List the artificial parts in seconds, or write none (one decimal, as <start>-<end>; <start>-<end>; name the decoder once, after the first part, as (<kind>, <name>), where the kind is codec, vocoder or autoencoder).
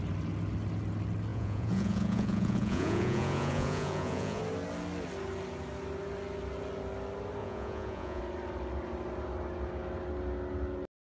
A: 1.3-4.4 (vocoder, Vocos); 7.4-8.2